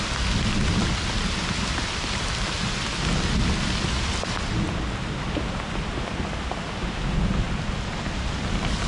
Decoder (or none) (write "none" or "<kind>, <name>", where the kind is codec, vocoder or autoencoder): none